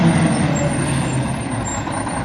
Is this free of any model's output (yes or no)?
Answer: yes